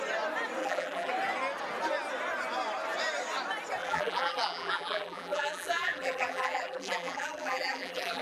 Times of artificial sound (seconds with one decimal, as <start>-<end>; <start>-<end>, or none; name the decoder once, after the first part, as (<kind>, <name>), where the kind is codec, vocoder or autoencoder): 0.6-1.1 (vocoder, BigVGAN v2); 3.8-8.2